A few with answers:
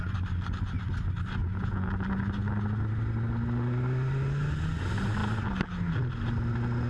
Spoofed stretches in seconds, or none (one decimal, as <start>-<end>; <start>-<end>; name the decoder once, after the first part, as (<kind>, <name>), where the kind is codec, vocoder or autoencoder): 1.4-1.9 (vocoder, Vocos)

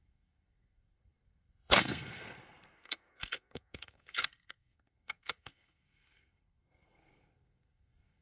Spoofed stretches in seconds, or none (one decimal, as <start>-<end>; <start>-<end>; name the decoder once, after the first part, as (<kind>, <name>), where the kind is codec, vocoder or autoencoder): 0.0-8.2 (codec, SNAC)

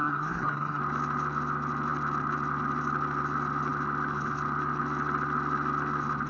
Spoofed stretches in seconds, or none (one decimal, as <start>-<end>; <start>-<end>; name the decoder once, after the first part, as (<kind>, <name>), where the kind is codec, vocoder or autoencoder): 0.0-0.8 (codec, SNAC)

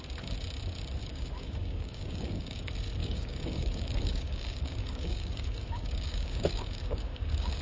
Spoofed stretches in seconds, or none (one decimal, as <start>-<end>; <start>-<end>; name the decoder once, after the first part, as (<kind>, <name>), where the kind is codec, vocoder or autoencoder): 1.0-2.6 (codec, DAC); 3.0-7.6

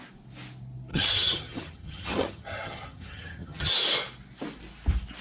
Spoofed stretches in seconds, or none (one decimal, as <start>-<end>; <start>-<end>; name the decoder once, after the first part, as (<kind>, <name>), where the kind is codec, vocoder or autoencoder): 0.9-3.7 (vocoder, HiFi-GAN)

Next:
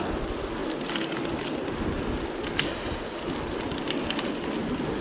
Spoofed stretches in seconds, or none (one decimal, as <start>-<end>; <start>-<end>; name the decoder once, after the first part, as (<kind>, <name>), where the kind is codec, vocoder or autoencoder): none

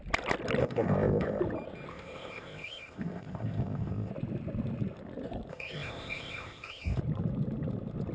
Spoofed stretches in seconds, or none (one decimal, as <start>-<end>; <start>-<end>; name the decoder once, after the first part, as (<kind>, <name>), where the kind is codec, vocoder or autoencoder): 0.6-1.4 (codec, ZipCodec); 1.9-4.1; 5.5-7.0

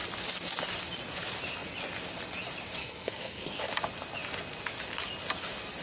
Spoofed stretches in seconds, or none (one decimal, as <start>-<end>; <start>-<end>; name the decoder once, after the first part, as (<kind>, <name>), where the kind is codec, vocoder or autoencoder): 2.8-3.6 (codec, SNAC)